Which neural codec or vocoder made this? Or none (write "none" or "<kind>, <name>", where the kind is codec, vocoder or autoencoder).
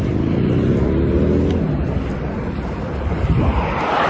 none